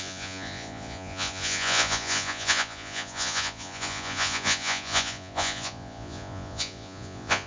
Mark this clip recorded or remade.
remade